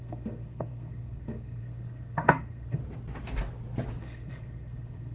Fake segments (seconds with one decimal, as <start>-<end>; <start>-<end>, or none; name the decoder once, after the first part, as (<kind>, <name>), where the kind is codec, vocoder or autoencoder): 0.0-2.8 (codec, SNAC); 4.0-5.1

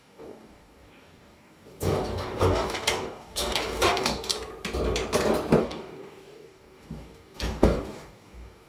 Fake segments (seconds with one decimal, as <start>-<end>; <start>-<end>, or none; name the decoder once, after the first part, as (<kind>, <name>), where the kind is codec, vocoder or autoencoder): 0.0-4.3 (codec, DAC); 5.6-8.7

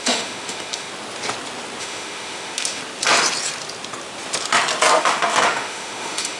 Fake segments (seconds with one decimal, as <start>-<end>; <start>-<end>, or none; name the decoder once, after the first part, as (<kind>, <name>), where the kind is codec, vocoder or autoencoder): 0.0-0.9 (autoencoder, DAC-VAE); 1.8-2.8; 5.0-6.4

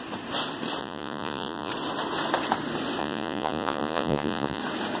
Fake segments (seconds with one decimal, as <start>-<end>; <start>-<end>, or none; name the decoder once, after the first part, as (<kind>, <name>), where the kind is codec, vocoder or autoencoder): 0.8-1.7 (vocoder, Vocos); 3.0-4.6

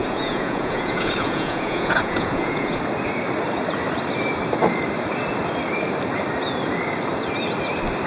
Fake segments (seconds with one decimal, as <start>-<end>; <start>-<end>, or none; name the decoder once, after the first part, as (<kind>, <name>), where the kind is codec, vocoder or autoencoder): 0.0-2.8 (vocoder, Vocos)

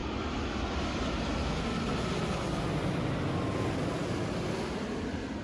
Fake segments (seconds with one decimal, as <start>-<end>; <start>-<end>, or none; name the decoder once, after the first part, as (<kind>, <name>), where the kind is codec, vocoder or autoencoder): 0.0-1.9 (vocoder, BigVGAN v2)